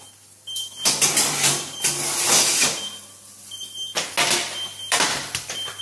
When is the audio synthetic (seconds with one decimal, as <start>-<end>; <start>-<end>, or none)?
4.7-5.8